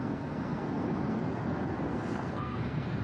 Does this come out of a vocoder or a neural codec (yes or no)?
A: yes